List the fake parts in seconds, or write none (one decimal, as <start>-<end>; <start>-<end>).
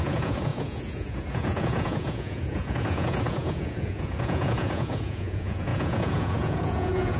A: 0.0-7.2